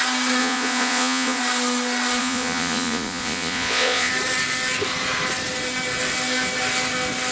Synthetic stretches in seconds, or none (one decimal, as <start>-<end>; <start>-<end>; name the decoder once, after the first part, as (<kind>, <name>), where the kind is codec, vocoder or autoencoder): 0.4-1.4 (vocoder, Vocos); 2.2-4.1